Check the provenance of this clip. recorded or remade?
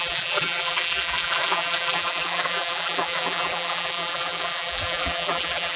remade